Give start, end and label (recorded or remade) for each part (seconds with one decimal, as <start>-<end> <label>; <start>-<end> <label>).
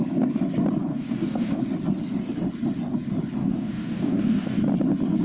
0.0-0.9 recorded; 0.9-1.6 remade; 1.6-3.4 recorded; 3.4-4.6 remade; 4.6-5.2 recorded